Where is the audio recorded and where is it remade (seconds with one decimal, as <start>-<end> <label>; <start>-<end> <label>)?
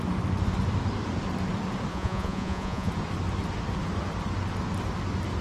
0.0-1.9 recorded; 1.9-2.9 remade; 2.9-5.4 recorded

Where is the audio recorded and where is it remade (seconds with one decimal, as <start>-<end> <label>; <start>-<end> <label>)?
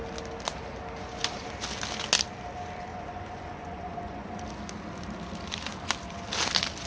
0.0-2.9 recorded; 2.9-4.4 remade; 4.4-6.9 recorded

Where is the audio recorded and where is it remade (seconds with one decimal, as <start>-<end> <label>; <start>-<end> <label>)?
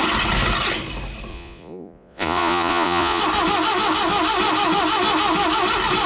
0.0-1.3 recorded; 1.3-3.2 remade; 3.2-6.1 recorded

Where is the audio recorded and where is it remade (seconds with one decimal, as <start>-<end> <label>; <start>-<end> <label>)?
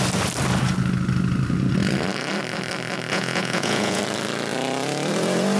0.0-3.1 recorded; 3.1-4.0 remade; 4.0-5.6 recorded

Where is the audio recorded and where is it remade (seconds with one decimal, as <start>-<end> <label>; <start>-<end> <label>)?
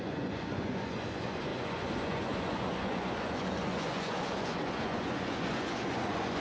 0.0-6.4 remade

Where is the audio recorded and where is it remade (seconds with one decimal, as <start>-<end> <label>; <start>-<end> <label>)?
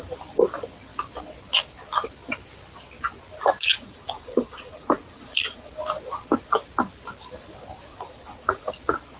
0.0-3.7 recorded; 3.7-5.7 remade; 5.7-7.9 recorded; 7.9-8.7 remade; 8.7-9.2 recorded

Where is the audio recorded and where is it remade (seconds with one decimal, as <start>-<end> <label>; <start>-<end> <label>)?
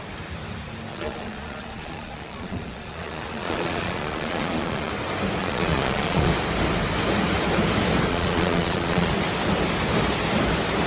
0.0-0.9 recorded; 0.9-4.9 remade; 4.9-5.4 recorded; 5.4-6.3 remade; 6.3-8.1 recorded; 8.1-9.1 remade; 9.1-10.9 recorded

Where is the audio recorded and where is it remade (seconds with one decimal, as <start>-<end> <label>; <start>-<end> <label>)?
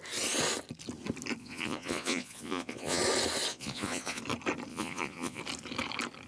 0.0-1.4 recorded; 1.4-3.0 remade; 3.0-3.5 recorded; 3.5-4.2 remade; 4.2-4.7 recorded; 4.7-5.4 remade; 5.4-6.3 recorded